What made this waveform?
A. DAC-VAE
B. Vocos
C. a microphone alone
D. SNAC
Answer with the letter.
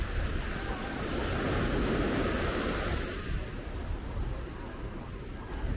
C